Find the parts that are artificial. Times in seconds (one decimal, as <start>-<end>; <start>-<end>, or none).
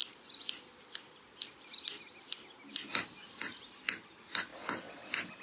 0.0-2.7; 4.5-5.4